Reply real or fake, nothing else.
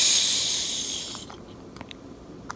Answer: fake